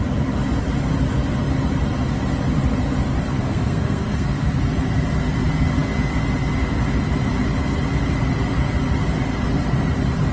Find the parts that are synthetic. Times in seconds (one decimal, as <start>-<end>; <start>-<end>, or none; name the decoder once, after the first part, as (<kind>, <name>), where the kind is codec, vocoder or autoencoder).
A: 3.4-4.5 (codec, SNAC)